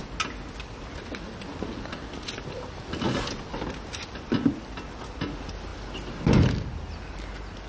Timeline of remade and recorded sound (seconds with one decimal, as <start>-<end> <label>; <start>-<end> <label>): 0.0-7.7 recorded